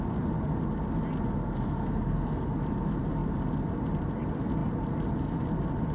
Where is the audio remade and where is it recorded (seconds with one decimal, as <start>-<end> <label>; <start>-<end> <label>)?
0.0-1.4 recorded; 1.4-2.5 remade; 2.5-5.9 recorded